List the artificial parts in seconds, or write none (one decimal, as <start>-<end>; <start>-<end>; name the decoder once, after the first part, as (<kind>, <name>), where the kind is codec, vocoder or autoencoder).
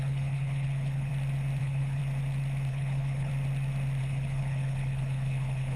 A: 0.0-1.1 (codec, HILCodec); 1.6-2.0; 2.7-3.3; 4.0-5.8